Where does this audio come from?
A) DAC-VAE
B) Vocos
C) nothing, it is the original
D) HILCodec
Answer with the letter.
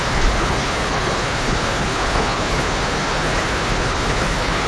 D